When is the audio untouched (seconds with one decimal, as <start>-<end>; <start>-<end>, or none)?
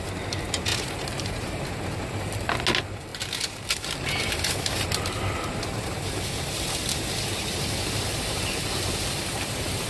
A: 0.0-0.7; 1.6-8.1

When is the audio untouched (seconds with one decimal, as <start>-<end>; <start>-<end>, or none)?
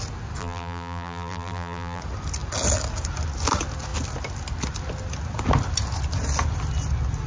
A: 0.0-0.4; 2.0-7.3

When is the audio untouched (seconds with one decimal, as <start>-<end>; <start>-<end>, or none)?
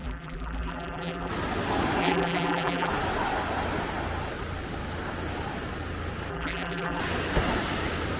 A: 1.3-2.0; 2.9-6.3; 7.0-8.2